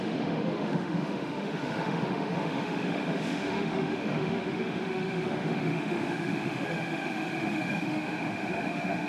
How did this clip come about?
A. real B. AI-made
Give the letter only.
B